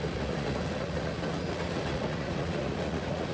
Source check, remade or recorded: remade